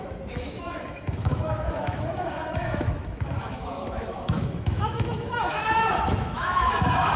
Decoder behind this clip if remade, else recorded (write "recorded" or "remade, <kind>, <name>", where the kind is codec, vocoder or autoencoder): remade, autoencoder, DAC-VAE